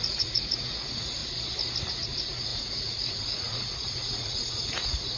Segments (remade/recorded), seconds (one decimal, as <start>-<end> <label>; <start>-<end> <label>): 0.0-1.2 remade; 1.2-1.9 recorded; 1.9-5.2 remade